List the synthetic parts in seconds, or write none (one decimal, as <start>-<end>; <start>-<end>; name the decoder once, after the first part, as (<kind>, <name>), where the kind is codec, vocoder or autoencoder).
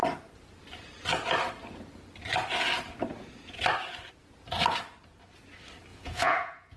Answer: 5.9-6.8 (vocoder, Vocos)